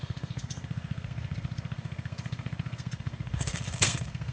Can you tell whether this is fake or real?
fake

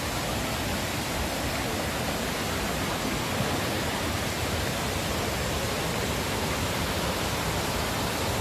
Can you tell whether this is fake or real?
real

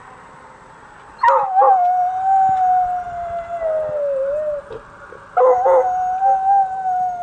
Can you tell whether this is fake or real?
real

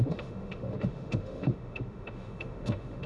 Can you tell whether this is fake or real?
fake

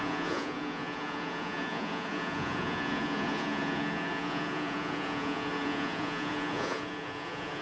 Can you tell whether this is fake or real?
fake